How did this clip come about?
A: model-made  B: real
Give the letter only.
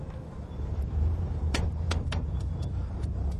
A